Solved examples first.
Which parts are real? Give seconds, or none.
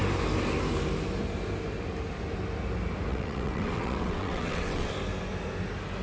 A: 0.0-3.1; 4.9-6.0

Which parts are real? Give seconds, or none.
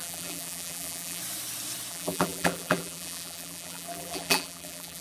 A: 1.2-1.9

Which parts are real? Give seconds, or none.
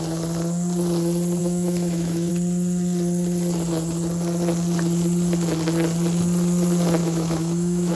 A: 0.0-1.4; 2.3-7.0